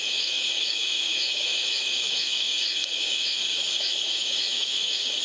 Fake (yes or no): yes